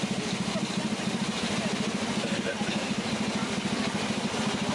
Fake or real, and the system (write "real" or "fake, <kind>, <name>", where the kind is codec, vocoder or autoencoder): real